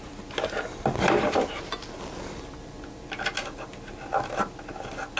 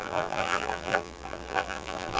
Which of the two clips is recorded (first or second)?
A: first